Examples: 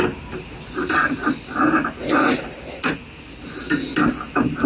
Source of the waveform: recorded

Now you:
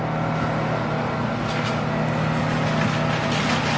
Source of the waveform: recorded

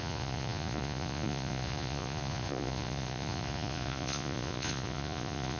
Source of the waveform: remade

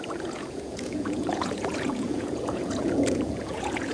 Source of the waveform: remade